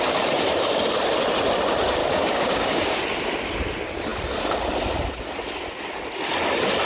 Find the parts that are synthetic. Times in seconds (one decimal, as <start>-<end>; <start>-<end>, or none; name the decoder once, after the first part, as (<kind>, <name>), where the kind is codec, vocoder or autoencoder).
2.0-3.0 (codec, DAC)